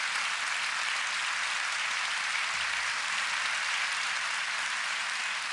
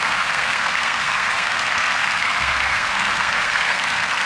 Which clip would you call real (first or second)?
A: first